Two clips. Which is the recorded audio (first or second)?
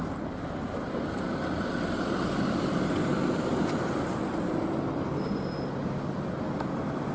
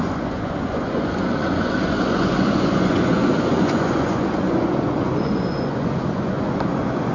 first